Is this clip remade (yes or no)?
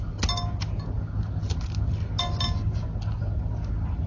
no